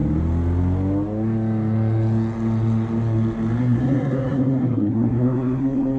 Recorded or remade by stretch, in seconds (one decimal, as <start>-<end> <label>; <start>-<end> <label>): 0.0-3.6 recorded; 3.6-6.0 remade